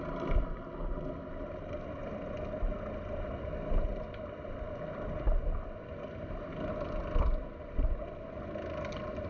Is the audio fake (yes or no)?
no